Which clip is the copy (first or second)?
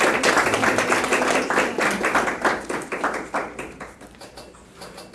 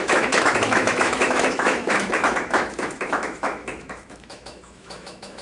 second